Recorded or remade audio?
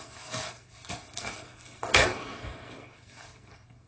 remade